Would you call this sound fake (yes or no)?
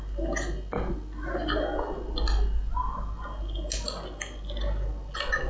no